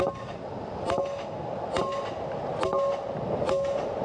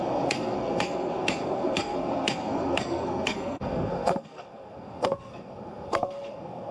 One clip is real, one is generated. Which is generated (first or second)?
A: second